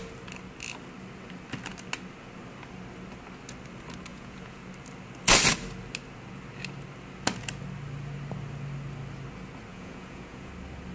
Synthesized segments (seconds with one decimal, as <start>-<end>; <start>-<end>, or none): 4.1-4.6; 9.7-10.5